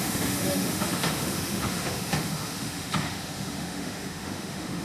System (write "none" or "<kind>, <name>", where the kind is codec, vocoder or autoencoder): autoencoder, DAC-VAE